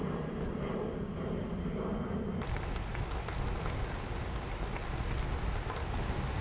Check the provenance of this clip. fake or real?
real